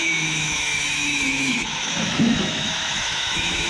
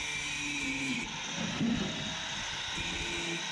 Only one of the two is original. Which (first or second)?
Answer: second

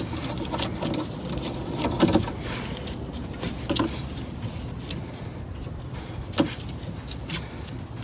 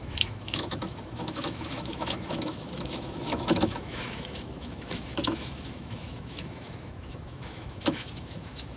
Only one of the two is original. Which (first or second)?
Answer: first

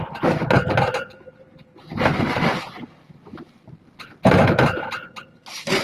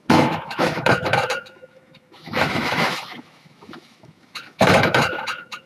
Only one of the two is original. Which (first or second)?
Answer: first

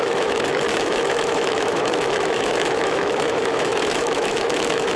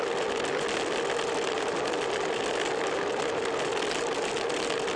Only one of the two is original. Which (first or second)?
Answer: second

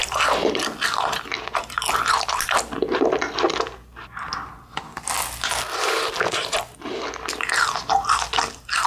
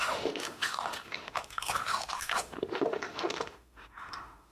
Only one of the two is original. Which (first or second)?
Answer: first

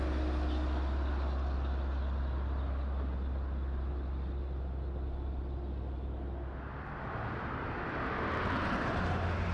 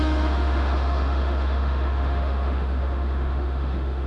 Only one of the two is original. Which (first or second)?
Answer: first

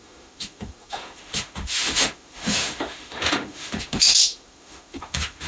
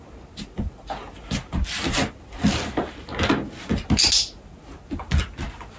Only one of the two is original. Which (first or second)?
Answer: second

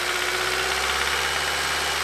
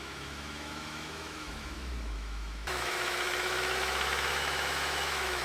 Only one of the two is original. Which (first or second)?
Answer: first